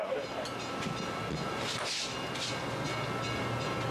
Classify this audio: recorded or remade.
recorded